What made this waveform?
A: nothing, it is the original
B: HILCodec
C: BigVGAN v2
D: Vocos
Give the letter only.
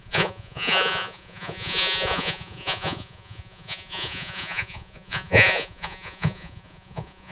D